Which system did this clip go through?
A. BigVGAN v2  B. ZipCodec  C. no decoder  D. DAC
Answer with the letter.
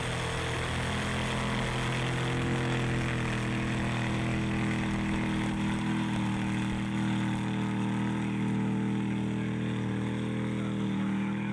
C